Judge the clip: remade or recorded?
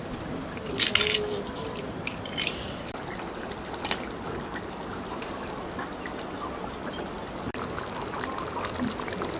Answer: recorded